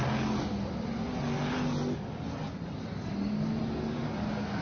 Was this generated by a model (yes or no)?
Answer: no